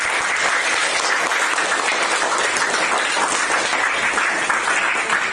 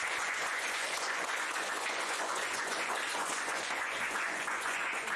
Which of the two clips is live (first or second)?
first